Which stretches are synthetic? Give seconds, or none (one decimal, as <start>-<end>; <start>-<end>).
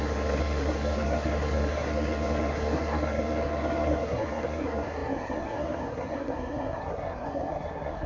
0.0-8.1